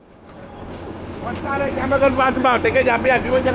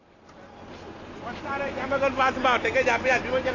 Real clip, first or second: second